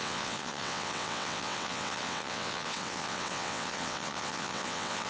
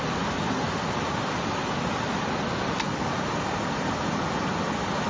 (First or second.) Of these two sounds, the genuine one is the second